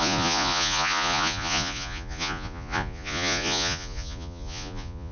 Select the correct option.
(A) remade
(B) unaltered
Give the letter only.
A